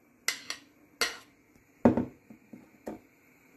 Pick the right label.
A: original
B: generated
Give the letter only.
A